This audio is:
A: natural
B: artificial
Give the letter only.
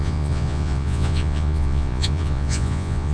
B